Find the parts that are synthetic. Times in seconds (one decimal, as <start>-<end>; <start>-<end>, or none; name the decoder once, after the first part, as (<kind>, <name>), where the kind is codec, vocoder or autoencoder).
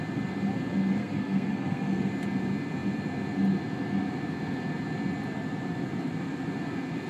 1.0-2.1 (codec, SNAC)